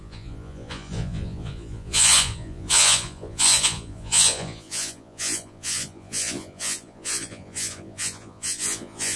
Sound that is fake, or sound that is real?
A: fake